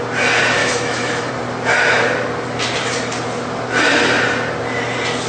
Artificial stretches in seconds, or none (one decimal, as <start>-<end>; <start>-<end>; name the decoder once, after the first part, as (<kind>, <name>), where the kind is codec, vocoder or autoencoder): 0.6-1.3 (autoencoder, DAC-VAE)